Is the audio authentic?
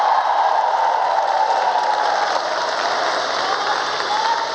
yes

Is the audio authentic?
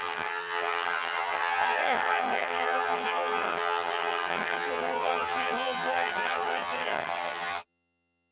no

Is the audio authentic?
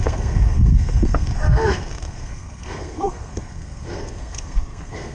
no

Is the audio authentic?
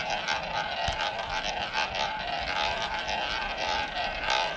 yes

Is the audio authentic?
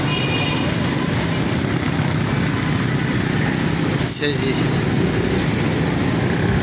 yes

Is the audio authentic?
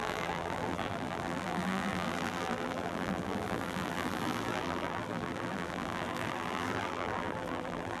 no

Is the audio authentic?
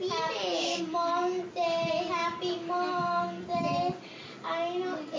yes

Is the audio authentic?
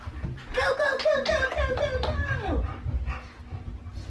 yes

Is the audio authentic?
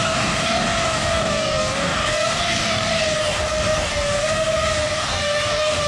no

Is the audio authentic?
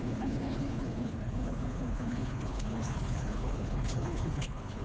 no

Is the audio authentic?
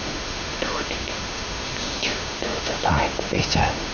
no